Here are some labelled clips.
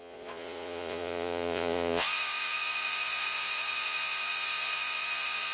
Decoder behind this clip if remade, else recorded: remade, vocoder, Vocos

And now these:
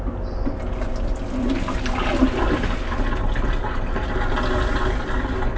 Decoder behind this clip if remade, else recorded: recorded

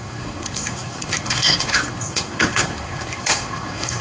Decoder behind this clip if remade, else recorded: remade, codec, SNAC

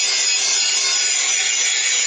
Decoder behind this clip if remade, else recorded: recorded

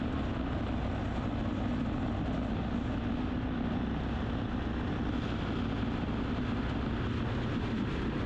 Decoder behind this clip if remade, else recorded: recorded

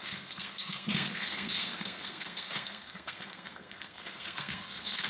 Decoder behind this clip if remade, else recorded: remade, codec, SNAC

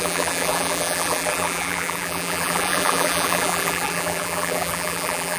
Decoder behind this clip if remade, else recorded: remade, vocoder, BigVGAN v2